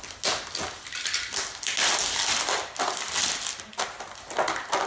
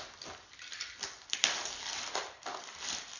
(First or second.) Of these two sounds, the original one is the first